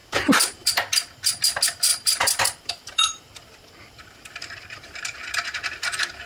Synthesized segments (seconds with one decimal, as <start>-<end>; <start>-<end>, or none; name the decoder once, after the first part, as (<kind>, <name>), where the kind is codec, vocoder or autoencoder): 0.0-0.7 (vocoder, BigVGAN v2); 1.9-5.3